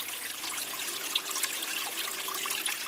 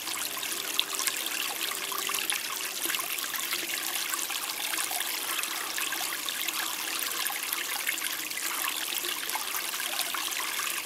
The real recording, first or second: second